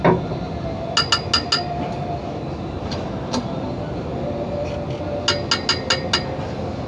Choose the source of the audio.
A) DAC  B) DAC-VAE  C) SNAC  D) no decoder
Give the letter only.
D